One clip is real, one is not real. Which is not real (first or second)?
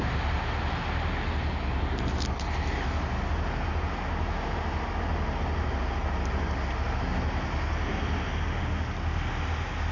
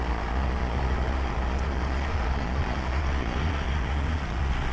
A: second